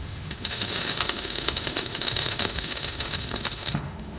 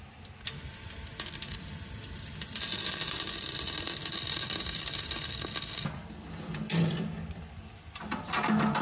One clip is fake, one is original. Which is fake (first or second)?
first